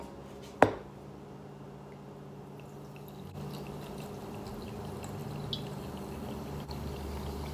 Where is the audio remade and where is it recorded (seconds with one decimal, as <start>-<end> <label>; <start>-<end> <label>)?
0.0-7.5 recorded